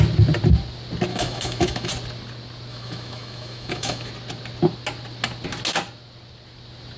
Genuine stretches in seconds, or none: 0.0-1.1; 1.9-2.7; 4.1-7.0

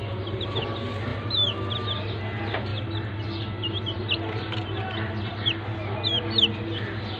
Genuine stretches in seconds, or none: 0.0-7.2

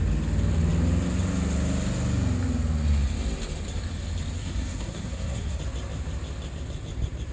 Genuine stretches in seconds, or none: 0.0-4.4; 5.6-7.3